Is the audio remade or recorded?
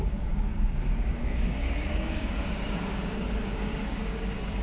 remade